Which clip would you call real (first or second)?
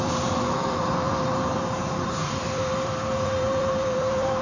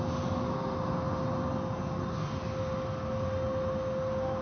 second